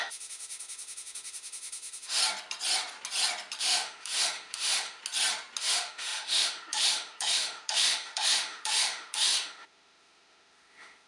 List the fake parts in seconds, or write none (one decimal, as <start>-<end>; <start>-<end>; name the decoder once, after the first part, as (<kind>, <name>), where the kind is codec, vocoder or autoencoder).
0.0-2.2 (autoencoder, DAC-VAE); 3.6-5.0; 5.6-11.1